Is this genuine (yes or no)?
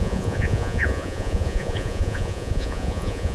no